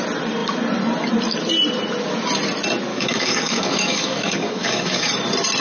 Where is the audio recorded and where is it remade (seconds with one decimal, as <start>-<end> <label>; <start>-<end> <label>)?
0.0-2.9 recorded; 2.9-5.1 remade; 5.1-5.6 recorded